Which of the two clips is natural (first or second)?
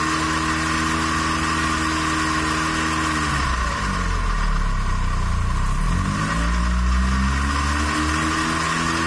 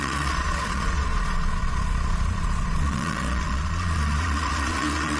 first